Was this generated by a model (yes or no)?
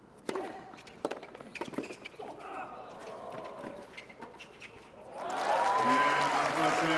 no